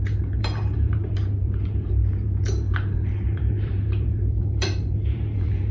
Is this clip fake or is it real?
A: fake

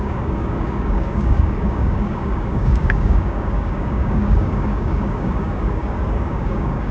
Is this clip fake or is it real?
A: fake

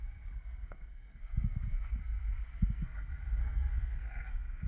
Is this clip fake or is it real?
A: fake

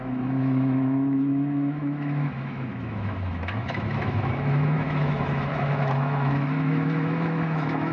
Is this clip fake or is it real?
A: fake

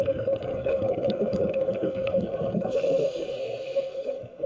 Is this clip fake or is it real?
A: fake